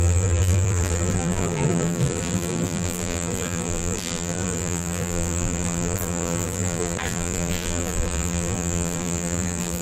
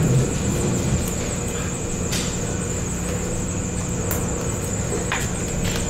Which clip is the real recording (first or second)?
second